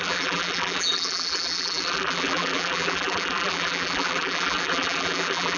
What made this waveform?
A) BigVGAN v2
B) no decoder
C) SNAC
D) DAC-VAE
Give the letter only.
A